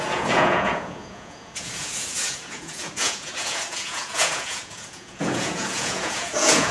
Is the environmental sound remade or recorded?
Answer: remade